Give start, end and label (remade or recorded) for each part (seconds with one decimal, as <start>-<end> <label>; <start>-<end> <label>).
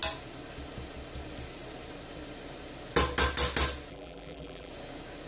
0.0-3.9 recorded; 3.9-4.7 remade; 4.7-5.3 recorded